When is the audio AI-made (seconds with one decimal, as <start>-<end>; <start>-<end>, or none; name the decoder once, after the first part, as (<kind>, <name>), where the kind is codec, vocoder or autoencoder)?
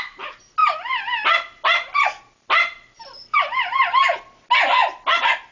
none